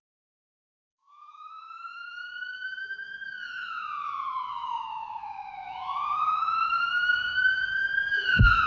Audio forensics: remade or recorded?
remade